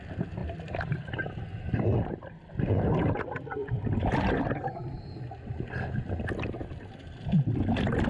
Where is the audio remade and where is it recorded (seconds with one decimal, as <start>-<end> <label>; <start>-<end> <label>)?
0.0-3.6 recorded; 3.6-4.4 remade; 4.4-8.1 recorded